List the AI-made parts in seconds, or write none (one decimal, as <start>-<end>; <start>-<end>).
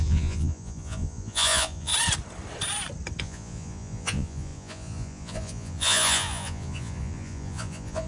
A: 0.0-1.9; 3.2-8.1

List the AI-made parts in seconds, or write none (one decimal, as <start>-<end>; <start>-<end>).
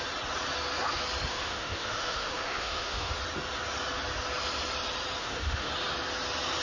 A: 1.3-3.1; 5.2-5.7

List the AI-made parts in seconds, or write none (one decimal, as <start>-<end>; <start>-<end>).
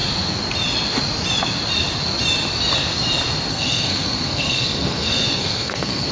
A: 3.5-6.1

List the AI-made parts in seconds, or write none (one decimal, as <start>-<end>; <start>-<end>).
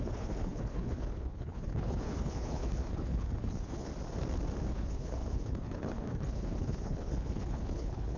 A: 0.0-3.9; 4.7-8.2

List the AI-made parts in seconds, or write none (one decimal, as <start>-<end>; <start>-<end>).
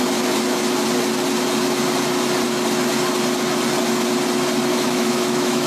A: 4.7-5.7